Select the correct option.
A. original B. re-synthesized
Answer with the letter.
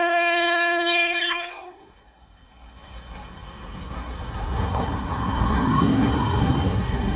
B